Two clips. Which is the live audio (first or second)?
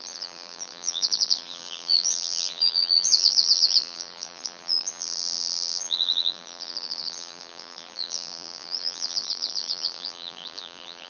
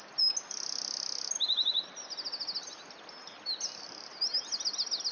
second